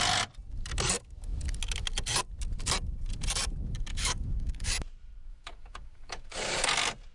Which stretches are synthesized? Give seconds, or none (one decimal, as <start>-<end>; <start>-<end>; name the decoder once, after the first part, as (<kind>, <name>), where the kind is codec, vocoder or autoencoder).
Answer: 3.9-4.7 (codec, DAC); 5.3-6.6